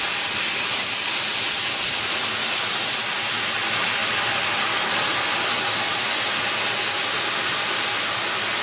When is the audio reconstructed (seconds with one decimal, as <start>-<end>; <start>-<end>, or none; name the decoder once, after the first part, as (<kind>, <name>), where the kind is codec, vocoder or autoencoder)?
none

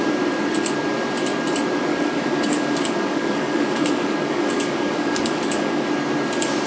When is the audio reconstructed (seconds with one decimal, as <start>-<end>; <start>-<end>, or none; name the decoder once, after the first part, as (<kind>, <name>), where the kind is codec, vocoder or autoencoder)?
1.9-5.9 (codec, DAC)

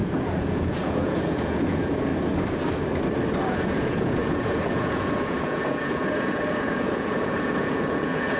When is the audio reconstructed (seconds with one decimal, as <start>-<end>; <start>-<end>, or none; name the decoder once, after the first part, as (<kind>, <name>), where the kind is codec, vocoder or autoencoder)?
0.0-2.1 (vocoder, Vocos); 3.5-8.4

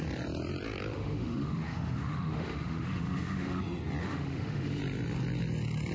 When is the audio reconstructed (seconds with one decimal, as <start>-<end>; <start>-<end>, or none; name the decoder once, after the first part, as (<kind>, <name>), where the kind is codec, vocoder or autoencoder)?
0.9-3.6 (autoencoder, DAC-VAE); 4.0-4.8

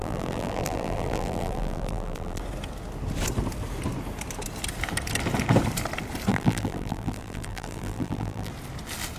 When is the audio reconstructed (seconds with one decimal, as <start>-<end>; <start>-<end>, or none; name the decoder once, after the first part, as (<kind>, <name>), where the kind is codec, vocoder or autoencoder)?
0.0-2.4 (vocoder, BigVGAN v2); 6.3-8.5

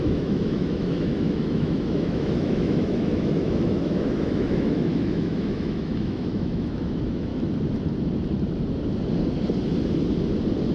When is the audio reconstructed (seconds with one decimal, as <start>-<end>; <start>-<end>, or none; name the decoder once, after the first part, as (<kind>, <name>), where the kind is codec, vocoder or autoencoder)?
0.0-7.3 (autoencoder, DAC-VAE)

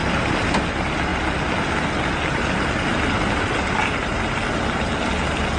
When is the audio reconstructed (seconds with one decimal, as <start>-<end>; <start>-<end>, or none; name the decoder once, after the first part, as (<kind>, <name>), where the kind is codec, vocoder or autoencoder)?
none